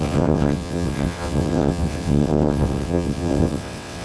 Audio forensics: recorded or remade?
remade